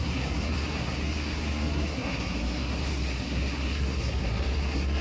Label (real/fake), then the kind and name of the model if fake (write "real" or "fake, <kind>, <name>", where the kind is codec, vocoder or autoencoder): fake, codec, SNAC